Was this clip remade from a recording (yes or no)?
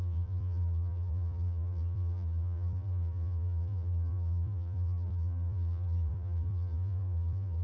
yes